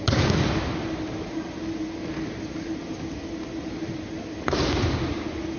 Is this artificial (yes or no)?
no